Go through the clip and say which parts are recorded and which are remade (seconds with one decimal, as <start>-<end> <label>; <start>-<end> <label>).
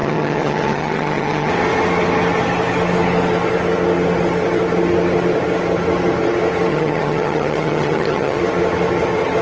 0.0-1.5 remade; 1.5-6.7 recorded; 6.7-8.4 remade; 8.4-9.4 recorded